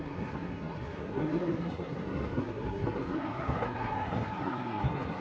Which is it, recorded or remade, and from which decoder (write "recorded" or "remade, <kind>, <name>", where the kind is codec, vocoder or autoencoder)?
remade, codec, SNAC